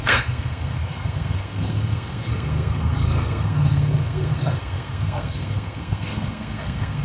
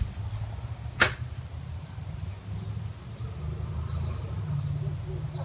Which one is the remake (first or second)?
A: first